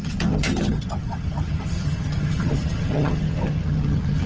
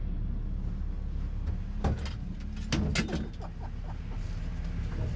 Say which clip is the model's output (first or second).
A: first